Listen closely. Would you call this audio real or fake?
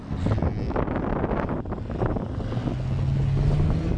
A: real